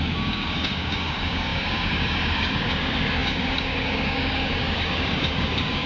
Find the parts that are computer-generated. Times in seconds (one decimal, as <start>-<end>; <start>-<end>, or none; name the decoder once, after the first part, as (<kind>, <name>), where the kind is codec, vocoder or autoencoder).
0.0-5.9 (codec, DAC)